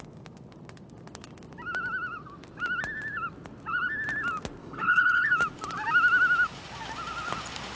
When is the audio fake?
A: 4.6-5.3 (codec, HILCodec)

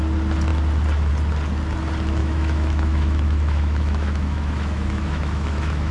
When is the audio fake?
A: 2.2-5.9 (autoencoder, DAC-VAE)

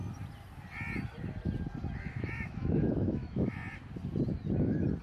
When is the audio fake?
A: 2.1-3.6 (autoencoder, DAC-VAE)

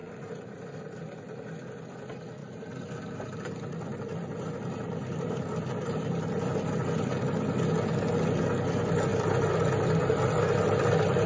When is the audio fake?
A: 0.0-1.0 (vocoder, BigVGAN v2); 2.4-6.5